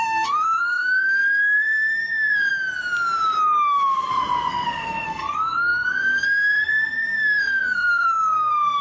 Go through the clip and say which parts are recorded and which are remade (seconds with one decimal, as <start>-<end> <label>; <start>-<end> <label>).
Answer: 0.0-2.5 remade; 2.5-4.5 recorded; 4.5-8.8 remade